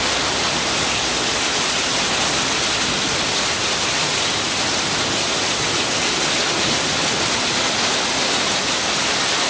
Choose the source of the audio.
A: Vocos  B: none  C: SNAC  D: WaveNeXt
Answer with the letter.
B